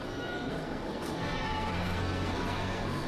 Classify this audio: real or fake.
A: fake